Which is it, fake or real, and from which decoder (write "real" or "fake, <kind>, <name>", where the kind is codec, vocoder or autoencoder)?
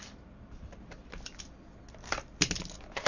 real